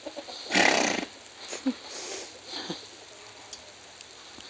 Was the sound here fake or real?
real